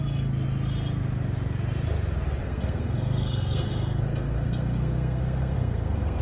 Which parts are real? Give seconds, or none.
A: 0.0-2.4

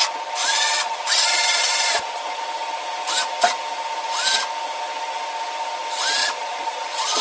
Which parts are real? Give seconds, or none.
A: 0.0-0.4; 2.4-6.2

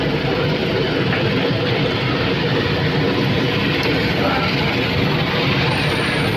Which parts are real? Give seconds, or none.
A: 0.0-6.4